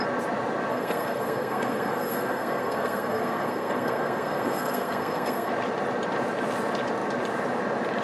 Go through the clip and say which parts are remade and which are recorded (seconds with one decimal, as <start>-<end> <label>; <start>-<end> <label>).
0.0-0.7 recorded; 0.7-5.5 remade; 5.5-8.0 recorded